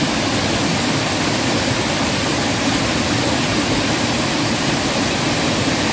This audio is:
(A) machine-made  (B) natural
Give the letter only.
A